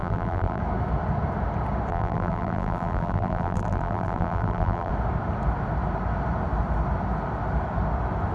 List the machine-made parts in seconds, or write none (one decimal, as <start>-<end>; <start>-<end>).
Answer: 0.0-0.6; 1.9-4.9